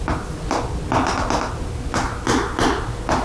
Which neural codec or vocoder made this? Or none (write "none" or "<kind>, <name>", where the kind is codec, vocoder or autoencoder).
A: none